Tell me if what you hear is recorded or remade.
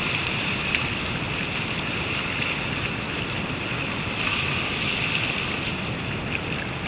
recorded